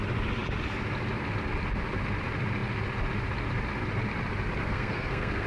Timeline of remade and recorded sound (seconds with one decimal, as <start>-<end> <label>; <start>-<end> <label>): 0.0-4.6 recorded; 4.6-5.5 remade